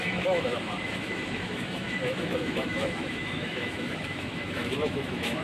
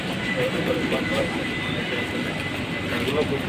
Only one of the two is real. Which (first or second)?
second